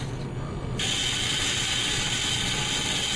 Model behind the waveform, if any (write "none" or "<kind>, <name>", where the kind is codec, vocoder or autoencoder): none